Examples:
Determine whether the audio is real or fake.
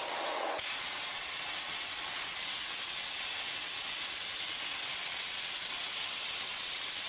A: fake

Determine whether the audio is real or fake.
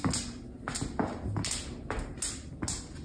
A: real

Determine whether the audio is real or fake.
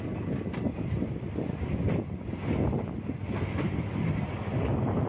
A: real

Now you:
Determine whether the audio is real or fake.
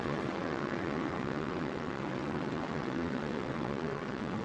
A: fake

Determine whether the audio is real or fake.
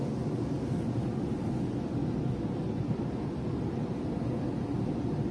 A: real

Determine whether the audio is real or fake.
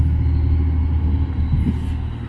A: real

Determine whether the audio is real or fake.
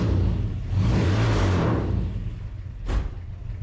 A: real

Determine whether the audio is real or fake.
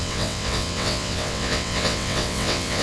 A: fake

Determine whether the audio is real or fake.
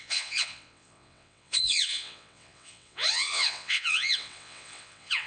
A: fake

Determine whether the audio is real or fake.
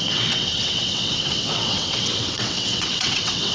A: fake